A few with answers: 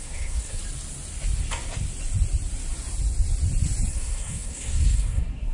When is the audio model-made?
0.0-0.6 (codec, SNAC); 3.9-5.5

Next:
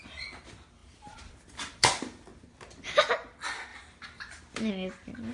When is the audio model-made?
none

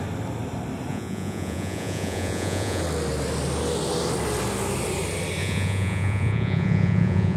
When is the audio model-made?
0.9-2.8 (vocoder, Vocos); 5.4-7.4

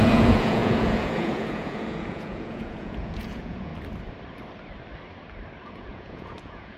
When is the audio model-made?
0.0-3.7 (vocoder, Vocos); 5.7-6.8

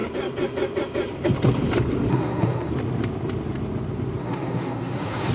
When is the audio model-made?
2.1-2.7 (codec, SNAC); 4.2-5.3

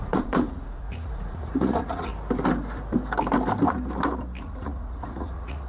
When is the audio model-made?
0.0-2.1 (vocoder, Vocos); 4.4-5.7

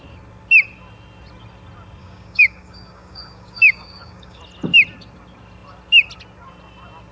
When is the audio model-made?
2.0-4.4 (codec, DAC)

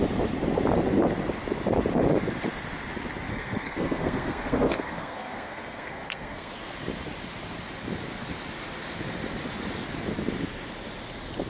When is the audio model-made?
3.3-6.5 (codec, SNAC)